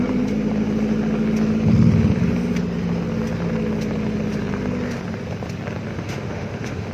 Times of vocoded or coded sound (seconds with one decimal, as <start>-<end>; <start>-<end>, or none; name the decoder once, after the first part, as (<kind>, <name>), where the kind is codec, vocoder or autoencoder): 5.9-6.9 (autoencoder, DAC-VAE)